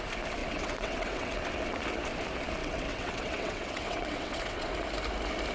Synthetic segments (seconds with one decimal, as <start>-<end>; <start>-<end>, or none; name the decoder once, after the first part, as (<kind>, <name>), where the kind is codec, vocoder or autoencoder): 0.4-1.5 (vocoder, WaveNeXt); 2.6-4.7